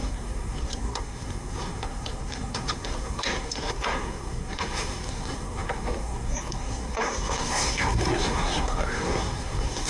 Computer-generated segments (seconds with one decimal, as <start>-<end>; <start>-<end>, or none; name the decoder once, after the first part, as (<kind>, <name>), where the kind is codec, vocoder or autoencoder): 0.0-9.9 (codec, SNAC)